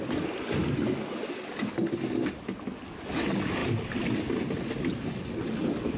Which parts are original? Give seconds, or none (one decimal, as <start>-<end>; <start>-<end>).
0.0-6.0